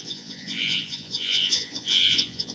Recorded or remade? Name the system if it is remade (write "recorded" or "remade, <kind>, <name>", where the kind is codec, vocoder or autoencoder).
remade, vocoder, Vocos